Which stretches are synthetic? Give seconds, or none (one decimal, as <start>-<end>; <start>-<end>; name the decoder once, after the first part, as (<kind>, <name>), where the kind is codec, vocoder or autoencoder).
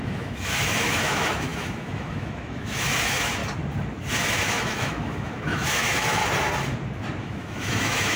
0.0-3.4 (autoencoder, DAC-VAE); 4.3-6.2; 7.2-8.2